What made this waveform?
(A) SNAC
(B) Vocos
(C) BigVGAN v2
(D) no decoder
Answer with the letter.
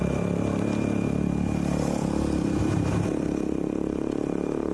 D